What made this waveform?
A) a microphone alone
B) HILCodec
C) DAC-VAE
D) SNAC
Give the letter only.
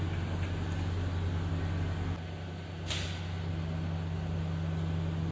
A